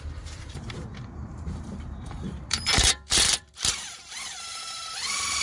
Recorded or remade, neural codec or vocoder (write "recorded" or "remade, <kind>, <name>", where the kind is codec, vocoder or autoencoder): remade, vocoder, BigVGAN v2